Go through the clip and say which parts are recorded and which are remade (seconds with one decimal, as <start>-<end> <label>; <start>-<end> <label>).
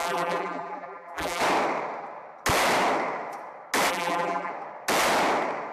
0.0-1.4 remade; 1.4-3.9 recorded; 3.9-4.5 remade; 4.5-5.7 recorded